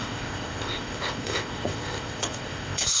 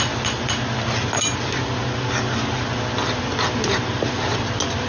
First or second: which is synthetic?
first